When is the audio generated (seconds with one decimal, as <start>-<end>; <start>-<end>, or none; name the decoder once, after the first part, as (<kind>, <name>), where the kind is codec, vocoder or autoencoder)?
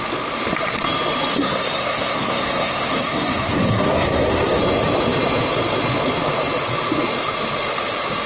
1.3-4.6 (codec, SNAC)